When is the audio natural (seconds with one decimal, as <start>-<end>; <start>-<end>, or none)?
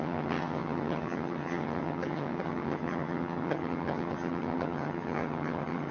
none